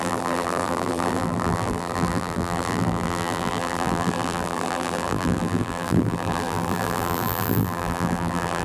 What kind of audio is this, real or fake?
fake